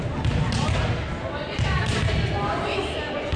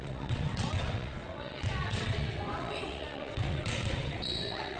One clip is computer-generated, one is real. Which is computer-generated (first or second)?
second